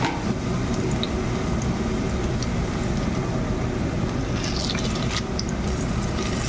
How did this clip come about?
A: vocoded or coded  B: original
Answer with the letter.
B